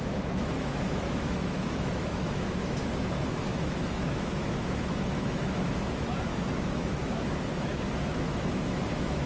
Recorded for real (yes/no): no